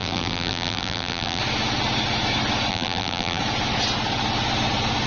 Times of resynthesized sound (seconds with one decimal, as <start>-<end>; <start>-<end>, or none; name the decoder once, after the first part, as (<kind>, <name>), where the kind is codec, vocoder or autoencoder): 0.0-1.4 (vocoder, BigVGAN v2); 2.7-3.4